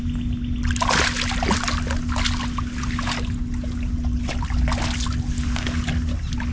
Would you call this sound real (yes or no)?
yes